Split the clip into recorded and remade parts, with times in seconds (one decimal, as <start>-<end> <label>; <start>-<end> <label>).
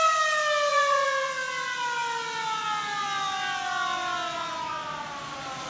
0.0-0.7 recorded; 0.7-1.3 remade; 1.3-5.7 recorded